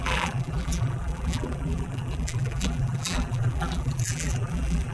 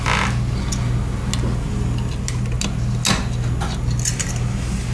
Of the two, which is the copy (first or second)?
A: first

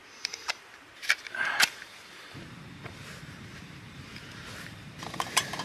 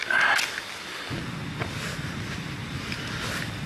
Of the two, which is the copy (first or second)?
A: first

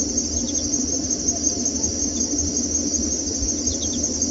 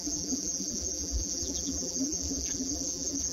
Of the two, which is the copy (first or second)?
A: second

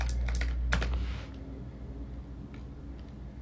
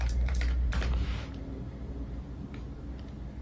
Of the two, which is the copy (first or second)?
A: second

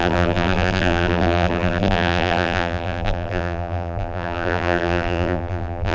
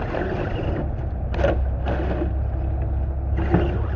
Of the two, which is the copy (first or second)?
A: first